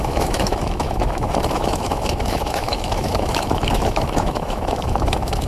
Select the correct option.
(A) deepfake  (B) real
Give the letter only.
A